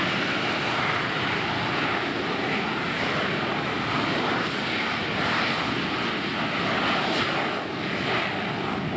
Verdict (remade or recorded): recorded